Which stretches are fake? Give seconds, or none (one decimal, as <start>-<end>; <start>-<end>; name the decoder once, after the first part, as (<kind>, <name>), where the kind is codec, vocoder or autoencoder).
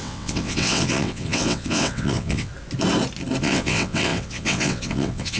0.0-2.5 (vocoder, WaveNeXt); 3.4-5.4